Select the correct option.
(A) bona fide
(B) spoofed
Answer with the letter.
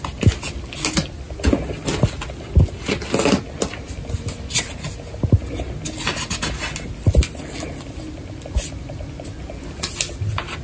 A